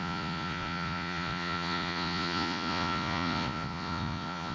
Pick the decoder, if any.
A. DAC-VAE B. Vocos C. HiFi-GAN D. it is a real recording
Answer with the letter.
B